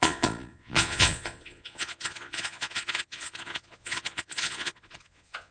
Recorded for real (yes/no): no